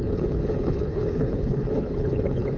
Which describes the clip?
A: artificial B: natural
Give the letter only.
A